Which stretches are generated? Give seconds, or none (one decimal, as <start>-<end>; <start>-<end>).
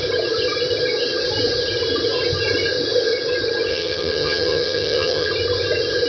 3.7-5.3